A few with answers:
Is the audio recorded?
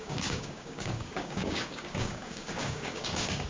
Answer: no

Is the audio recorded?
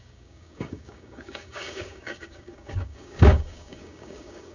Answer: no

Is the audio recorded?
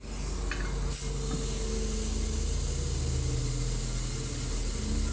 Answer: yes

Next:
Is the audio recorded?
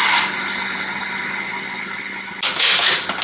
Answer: yes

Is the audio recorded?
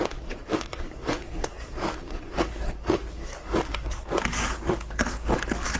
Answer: no